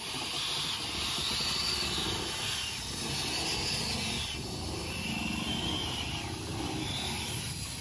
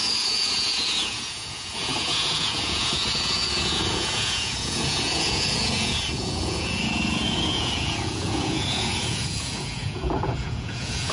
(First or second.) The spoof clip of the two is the second